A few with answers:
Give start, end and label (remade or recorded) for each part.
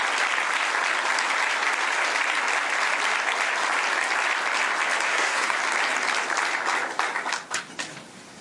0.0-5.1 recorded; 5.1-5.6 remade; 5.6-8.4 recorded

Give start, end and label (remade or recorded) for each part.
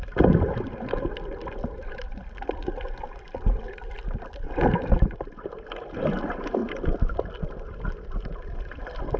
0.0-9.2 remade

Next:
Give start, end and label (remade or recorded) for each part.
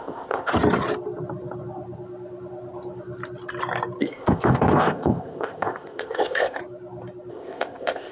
0.0-0.5 remade; 0.5-4.0 recorded; 4.0-6.6 remade; 6.6-7.3 recorded; 7.3-8.1 remade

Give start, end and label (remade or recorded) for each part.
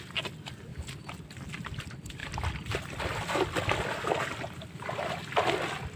0.0-6.0 recorded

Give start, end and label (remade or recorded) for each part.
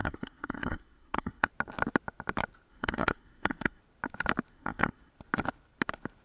0.0-1.5 remade; 1.5-2.7 recorded; 2.7-3.8 remade; 3.8-4.5 recorded; 4.5-5.1 remade; 5.1-6.2 recorded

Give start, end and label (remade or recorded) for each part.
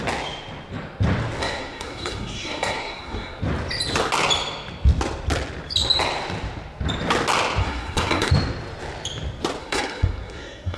0.0-1.4 recorded; 1.4-3.4 remade; 3.4-7.6 recorded; 7.6-8.3 remade; 8.3-9.6 recorded; 9.6-10.8 remade